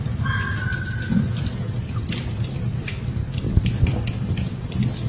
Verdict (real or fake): real